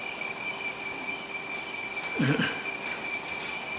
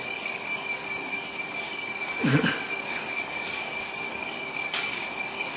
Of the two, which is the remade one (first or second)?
second